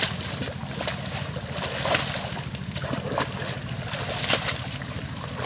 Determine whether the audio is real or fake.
real